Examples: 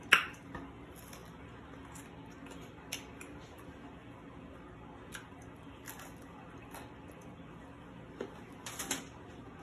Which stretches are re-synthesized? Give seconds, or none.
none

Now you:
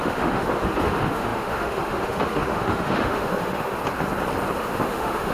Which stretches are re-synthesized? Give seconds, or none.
0.0-3.8 (autoencoder, DAC-VAE); 4.6-5.3

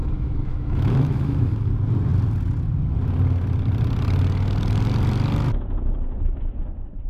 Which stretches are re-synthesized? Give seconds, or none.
0.0-1.7 (autoencoder, DAC-VAE)

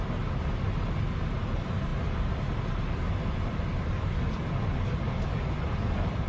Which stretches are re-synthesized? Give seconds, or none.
none

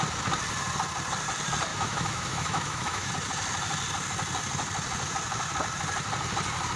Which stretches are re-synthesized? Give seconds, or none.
1.7-3.1 (autoencoder, DAC-VAE)

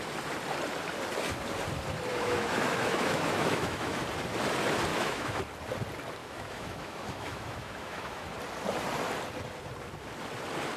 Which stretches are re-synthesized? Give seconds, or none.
2.1-4.0 (autoencoder, DAC-VAE); 4.9-5.4; 6.2-8.3